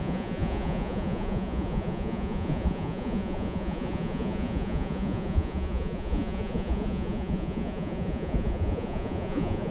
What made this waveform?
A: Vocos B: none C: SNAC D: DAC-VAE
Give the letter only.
A